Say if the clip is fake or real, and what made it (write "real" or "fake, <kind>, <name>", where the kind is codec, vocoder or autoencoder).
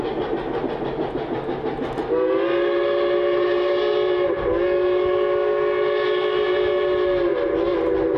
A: real